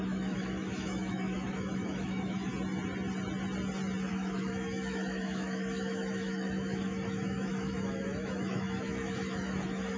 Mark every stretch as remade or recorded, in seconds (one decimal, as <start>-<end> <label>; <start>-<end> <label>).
0.0-2.5 remade; 2.5-4.1 recorded; 4.1-10.0 remade